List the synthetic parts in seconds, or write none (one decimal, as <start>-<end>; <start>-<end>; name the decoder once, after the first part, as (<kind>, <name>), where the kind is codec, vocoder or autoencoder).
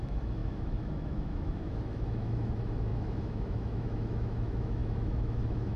0.0-5.8 (autoencoder, DAC-VAE)